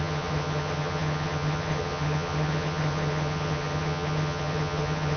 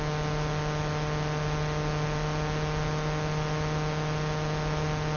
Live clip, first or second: second